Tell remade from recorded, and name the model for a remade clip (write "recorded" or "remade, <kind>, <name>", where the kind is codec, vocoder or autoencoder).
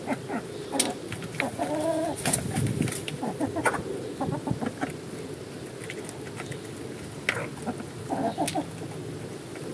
recorded